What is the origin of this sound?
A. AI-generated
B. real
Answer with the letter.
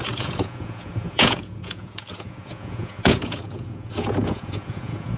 A